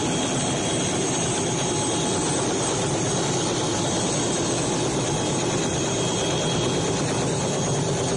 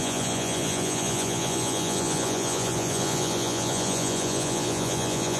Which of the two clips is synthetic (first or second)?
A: second